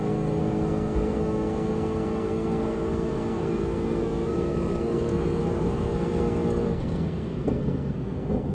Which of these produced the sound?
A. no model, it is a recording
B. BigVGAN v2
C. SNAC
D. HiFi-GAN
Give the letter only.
C